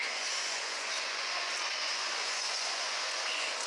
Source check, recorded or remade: remade